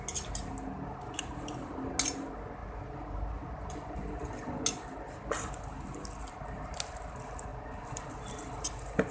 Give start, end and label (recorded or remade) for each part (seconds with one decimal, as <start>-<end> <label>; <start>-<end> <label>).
0.0-7.5 recorded; 7.5-9.1 remade